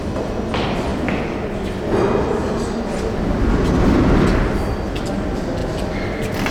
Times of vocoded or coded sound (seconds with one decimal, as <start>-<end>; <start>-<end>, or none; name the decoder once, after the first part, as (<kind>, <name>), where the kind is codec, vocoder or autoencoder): none